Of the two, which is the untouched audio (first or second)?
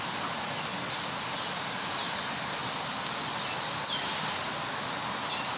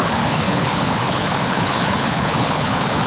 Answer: first